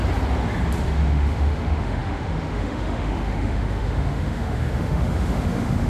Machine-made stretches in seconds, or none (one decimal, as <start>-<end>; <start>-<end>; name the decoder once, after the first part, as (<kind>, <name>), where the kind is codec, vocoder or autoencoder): 0.8-5.9 (autoencoder, DAC-VAE)